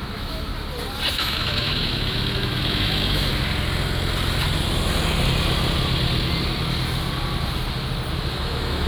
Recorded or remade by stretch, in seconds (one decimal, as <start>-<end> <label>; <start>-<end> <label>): 0.0-0.5 remade; 0.5-1.1 recorded; 1.1-3.3 remade; 3.3-8.3 recorded; 8.3-8.9 remade